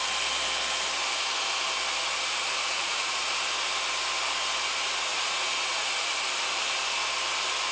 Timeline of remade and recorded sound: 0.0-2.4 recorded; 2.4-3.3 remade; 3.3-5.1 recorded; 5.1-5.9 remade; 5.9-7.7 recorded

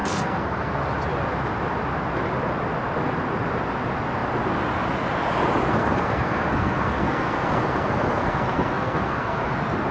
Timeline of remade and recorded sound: 0.0-0.7 remade; 0.7-5.7 recorded; 5.7-9.5 remade; 9.5-9.9 recorded

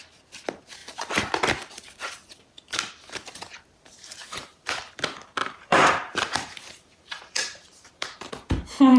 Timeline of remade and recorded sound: 0.0-4.2 recorded; 4.2-4.7 remade; 4.7-5.4 recorded; 5.4-8.3 remade; 8.3-9.0 recorded

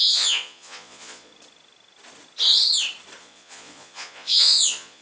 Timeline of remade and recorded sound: 0.0-1.3 remade; 1.3-3.2 recorded; 3.2-5.0 remade

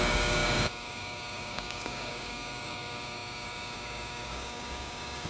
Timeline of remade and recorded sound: 0.0-5.3 remade